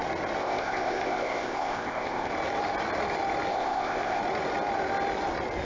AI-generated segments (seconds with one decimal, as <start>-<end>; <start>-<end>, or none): 0.4-2.3; 3.5-4.2